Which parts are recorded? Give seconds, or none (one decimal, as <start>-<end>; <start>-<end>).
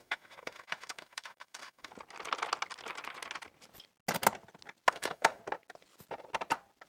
1.9-4.9; 5.4-6.9